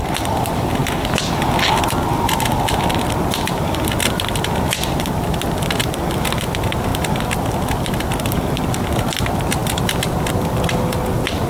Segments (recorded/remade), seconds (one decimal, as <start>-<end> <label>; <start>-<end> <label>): 0.0-11.5 recorded